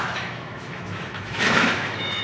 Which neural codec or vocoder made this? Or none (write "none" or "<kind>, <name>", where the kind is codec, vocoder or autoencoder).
autoencoder, DAC-VAE